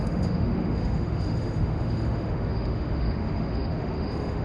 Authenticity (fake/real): fake